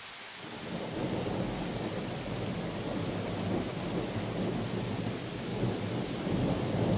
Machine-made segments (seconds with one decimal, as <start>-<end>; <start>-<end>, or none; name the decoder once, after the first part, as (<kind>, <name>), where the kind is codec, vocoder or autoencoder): none